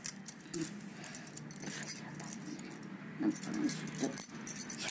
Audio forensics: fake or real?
real